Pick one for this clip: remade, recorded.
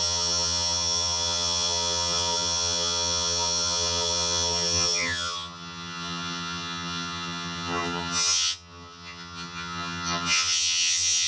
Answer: remade